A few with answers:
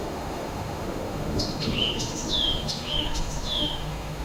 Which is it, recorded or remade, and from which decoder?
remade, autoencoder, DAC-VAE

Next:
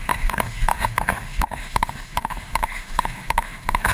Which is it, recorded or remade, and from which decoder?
remade, autoencoder, DAC-VAE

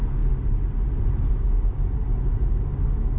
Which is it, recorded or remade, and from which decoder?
recorded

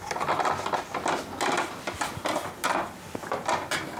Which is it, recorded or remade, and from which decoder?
recorded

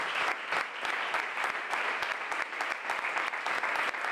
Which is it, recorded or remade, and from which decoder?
recorded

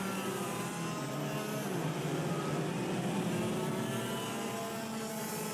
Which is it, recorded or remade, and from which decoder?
recorded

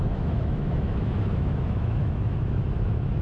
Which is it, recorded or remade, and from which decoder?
remade, autoencoder, DAC-VAE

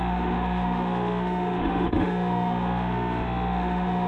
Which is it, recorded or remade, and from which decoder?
remade, autoencoder, DAC-VAE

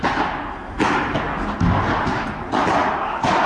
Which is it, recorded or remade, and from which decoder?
recorded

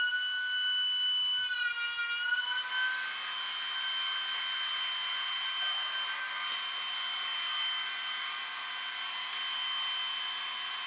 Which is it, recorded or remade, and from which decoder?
recorded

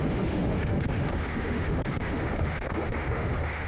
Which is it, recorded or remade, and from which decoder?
remade, autoencoder, DAC-VAE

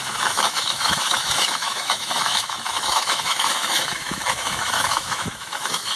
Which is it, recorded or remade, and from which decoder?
remade, autoencoder, DAC-VAE